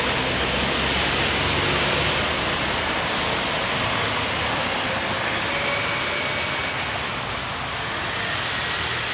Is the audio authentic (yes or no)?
yes